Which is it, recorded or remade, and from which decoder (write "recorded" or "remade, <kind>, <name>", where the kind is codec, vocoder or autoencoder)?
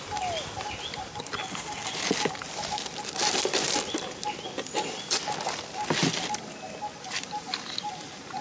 recorded